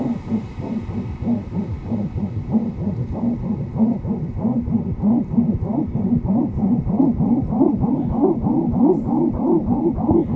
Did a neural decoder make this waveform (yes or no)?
no